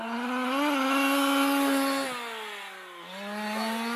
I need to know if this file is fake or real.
real